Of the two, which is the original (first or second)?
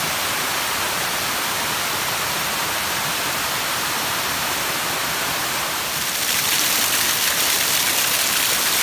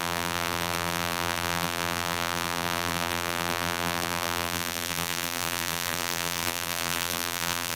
first